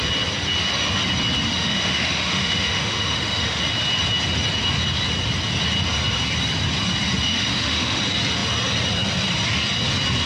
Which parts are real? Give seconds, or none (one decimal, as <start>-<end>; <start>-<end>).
0.0-1.5; 3.6-7.3; 8.0-10.3